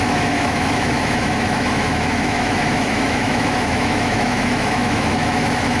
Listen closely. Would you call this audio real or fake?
fake